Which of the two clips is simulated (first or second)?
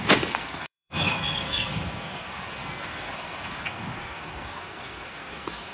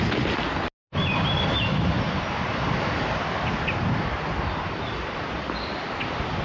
first